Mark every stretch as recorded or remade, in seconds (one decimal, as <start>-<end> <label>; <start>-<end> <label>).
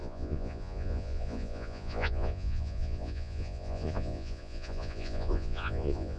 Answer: 0.0-6.2 remade